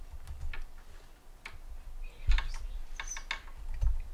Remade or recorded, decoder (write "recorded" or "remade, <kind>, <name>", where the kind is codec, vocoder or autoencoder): recorded